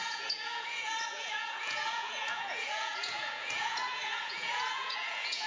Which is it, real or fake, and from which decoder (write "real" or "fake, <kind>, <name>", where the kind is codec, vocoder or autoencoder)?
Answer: fake, vocoder, Vocos